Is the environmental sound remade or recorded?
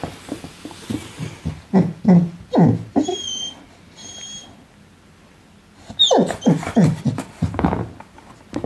recorded